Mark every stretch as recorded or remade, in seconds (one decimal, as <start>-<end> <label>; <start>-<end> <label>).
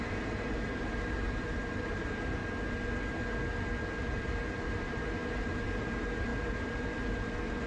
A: 0.0-2.4 remade; 2.4-4.0 recorded; 4.0-7.7 remade